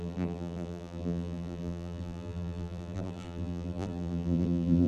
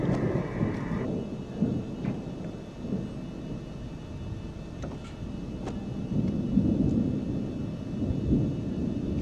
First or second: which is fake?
first